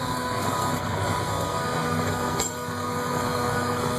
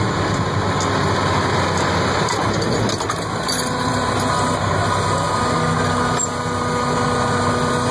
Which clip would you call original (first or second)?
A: second